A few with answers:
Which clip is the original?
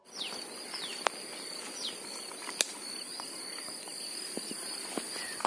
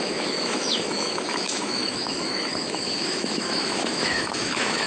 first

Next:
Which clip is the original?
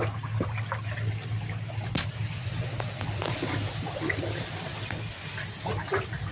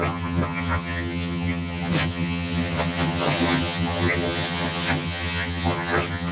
first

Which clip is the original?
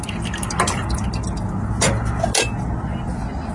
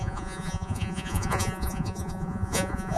first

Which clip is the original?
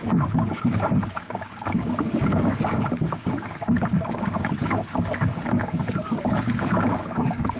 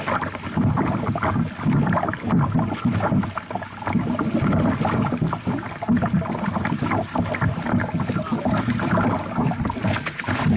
second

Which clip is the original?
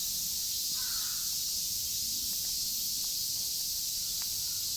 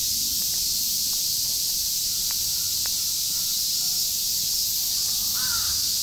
first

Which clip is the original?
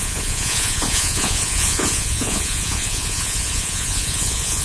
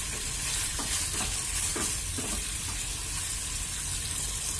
second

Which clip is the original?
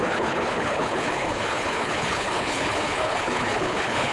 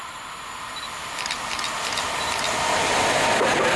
second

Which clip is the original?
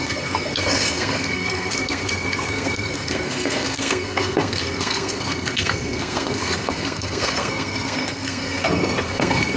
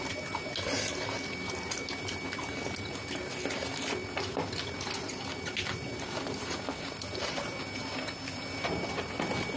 second